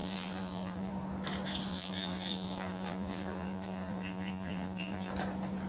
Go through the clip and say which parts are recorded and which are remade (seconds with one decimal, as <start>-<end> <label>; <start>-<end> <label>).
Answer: 0.0-0.9 remade; 0.9-1.7 recorded; 1.7-5.1 remade; 5.1-5.7 recorded